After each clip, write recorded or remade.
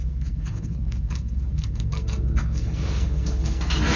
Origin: remade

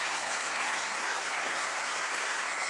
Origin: remade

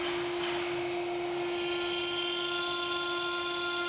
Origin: recorded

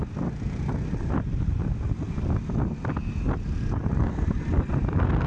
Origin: recorded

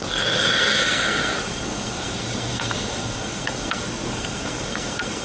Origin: remade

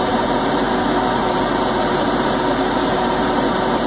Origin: remade